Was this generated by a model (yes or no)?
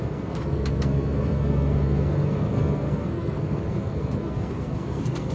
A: yes